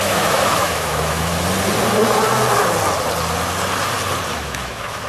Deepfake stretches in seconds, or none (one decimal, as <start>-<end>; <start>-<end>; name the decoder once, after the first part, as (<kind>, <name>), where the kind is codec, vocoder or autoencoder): 0.0-1.3 (autoencoder, DAC-VAE); 4.4-5.1